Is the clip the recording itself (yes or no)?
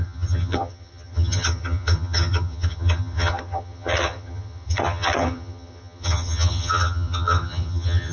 no